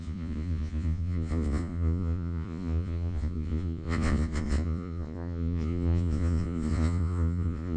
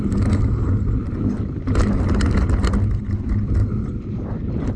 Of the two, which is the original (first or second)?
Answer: second